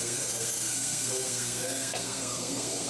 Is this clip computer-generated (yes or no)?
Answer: yes